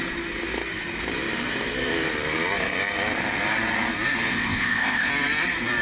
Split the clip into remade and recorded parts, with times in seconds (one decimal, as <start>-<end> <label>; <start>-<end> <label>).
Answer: 0.0-4.3 recorded; 4.3-5.1 remade; 5.1-5.8 recorded